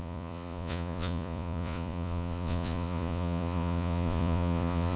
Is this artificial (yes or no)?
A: yes